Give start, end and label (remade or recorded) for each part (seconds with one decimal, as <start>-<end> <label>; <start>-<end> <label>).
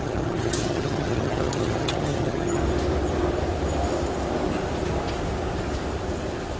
0.0-2.6 remade; 2.6-6.6 recorded